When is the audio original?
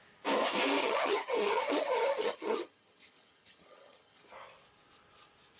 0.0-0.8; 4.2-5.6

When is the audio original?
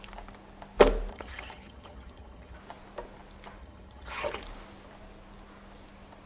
0.0-1.1; 2.6-3.6; 4.4-6.3